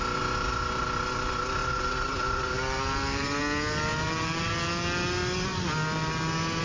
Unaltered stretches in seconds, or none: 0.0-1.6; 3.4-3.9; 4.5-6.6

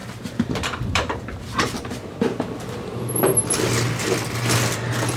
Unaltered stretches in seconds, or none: 3.1-5.2